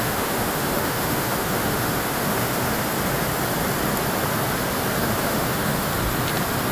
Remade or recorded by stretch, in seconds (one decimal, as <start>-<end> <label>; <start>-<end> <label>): 0.0-2.8 remade; 2.8-5.0 recorded; 5.0-5.9 remade; 5.9-6.7 recorded

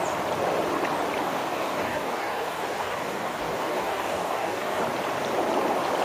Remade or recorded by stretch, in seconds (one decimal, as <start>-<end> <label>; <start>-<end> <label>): 0.0-1.2 recorded; 1.2-4.8 remade; 4.8-6.0 recorded

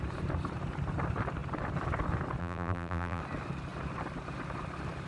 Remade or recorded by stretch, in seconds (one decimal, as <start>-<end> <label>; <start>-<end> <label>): 0.0-2.4 recorded; 2.4-3.2 remade; 3.2-5.1 recorded